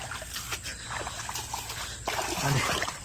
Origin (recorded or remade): recorded